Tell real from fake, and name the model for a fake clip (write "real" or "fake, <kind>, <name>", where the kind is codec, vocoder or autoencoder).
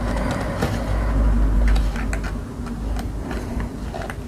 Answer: real